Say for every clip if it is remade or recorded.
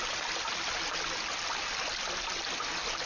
recorded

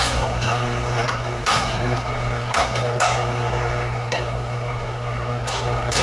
remade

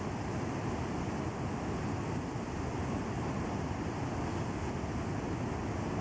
recorded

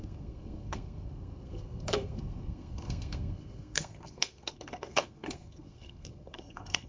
remade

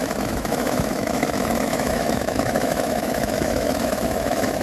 remade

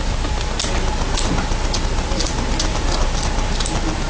recorded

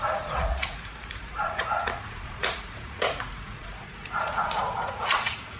remade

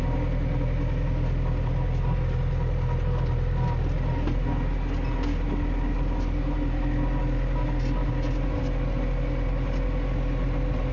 recorded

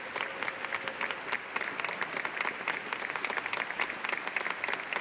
recorded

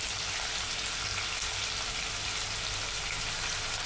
recorded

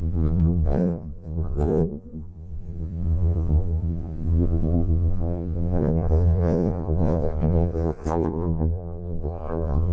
remade